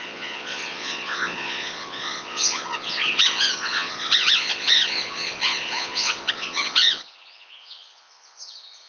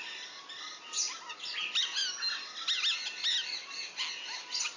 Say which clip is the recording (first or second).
second